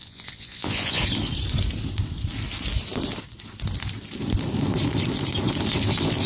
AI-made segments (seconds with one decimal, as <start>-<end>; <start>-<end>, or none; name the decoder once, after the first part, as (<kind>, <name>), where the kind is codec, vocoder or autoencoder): 0.0-1.0 (vocoder, Vocos)